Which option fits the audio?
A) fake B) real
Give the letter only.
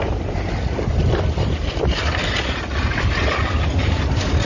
B